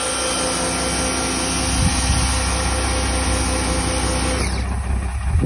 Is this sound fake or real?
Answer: real